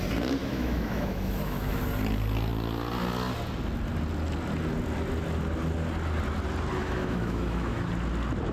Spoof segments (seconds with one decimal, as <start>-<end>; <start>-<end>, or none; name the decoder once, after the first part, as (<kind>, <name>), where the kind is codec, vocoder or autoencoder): 0.4-1.8 (autoencoder, DAC-VAE); 6.8-7.9